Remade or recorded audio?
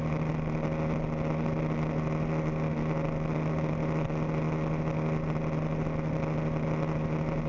recorded